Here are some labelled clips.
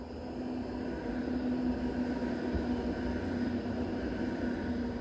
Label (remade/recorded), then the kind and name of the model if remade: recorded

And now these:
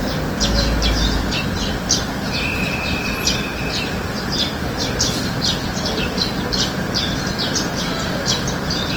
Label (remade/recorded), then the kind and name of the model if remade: recorded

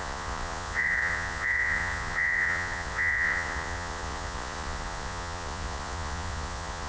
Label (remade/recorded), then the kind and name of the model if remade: remade, vocoder, Vocos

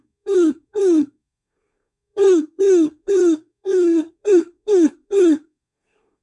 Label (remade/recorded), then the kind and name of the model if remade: remade, codec, SNAC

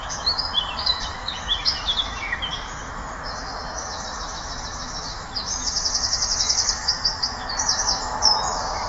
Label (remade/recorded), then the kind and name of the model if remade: remade, autoencoder, DAC-VAE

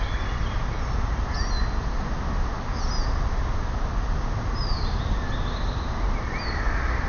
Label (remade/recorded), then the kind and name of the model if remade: recorded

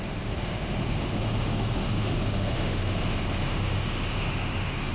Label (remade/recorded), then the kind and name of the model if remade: remade, autoencoder, DAC-VAE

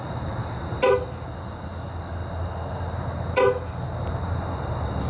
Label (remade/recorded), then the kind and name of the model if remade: recorded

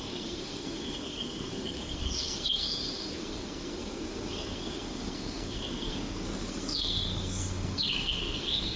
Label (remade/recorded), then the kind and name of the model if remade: remade, codec, SNAC